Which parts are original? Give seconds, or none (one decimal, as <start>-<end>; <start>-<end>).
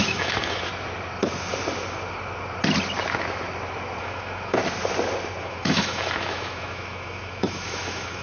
0.7-4.0; 4.6-5.4